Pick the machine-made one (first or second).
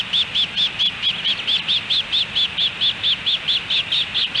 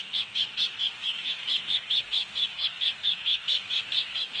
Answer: second